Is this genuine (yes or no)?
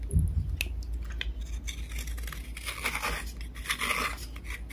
yes